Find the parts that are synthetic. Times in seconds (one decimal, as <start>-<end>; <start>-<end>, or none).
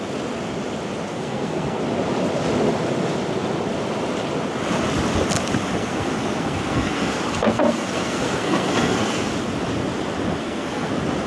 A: 1.1-1.8; 5.8-9.3; 10.4-10.9